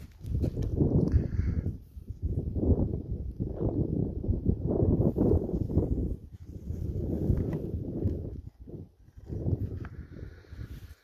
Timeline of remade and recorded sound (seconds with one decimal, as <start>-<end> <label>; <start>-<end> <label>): 0.0-0.7 recorded; 0.7-2.5 remade; 2.5-4.0 recorded; 4.0-4.7 remade; 4.7-6.0 recorded; 6.0-7.1 remade; 7.1-11.0 recorded